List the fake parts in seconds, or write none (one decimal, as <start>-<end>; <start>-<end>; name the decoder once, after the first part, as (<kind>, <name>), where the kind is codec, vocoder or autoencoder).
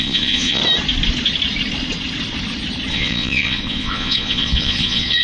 0.0-0.6 (vocoder, Vocos); 2.9-5.2